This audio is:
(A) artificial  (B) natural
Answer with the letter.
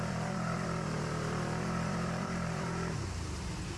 A